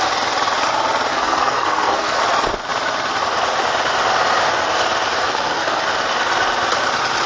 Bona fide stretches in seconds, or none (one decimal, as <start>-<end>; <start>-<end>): 0.0-1.1; 2.2-5.2; 5.8-7.3